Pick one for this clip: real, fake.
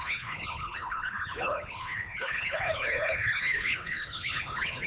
fake